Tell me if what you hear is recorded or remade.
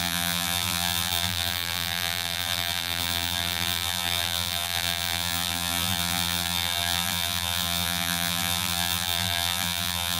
remade